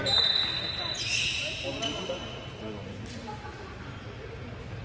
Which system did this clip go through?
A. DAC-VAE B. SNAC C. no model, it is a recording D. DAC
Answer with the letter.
C